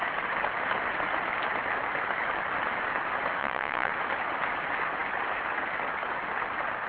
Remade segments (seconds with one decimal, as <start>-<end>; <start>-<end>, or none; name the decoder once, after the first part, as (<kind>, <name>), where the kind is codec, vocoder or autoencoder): 3.4-3.9 (vocoder, Vocos)